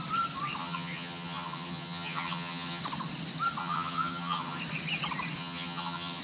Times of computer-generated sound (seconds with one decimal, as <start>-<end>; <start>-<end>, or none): 0.6-2.8; 3.6-4.6; 5.4-6.2